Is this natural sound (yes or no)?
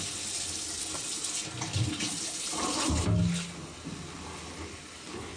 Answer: yes